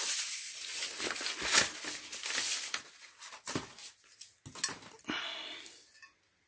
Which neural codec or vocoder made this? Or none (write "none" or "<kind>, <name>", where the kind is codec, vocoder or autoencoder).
none